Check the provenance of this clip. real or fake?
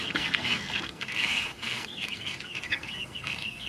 fake